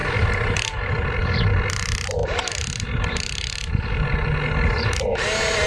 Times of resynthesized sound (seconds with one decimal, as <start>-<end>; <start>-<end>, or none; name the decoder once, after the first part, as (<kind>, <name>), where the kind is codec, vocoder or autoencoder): 0.0-0.9 (vocoder, BigVGAN v2)

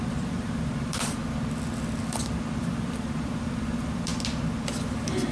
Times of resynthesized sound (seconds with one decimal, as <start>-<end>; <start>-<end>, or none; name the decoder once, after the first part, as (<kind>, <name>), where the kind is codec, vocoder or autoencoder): 0.0-1.2 (vocoder, BigVGAN v2); 2.0-4.1

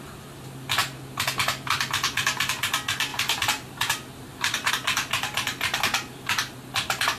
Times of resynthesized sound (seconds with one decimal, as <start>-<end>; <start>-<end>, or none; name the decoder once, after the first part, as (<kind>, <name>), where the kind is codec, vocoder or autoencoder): 3.1-4.7 (vocoder, BigVGAN v2)

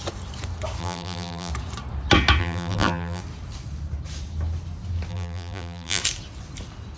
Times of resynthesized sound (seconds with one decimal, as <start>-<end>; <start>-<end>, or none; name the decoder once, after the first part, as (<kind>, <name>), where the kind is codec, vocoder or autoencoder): 0.8-1.5 (vocoder, BigVGAN v2); 2.4-3.2; 5.1-6.0

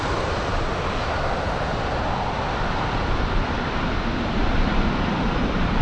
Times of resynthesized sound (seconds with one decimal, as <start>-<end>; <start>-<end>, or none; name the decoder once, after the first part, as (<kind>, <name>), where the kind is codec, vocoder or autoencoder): none